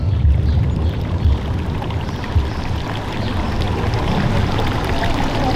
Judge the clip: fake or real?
real